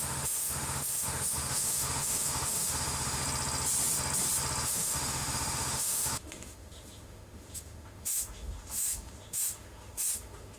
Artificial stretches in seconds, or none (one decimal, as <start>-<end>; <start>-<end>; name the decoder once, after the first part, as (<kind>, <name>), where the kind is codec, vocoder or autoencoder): 0.0-3.2 (autoencoder, DAC-VAE); 4.6-10.6